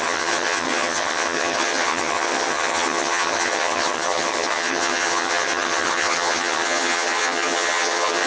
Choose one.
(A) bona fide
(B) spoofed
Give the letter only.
B